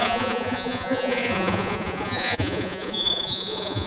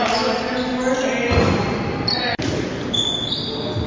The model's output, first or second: first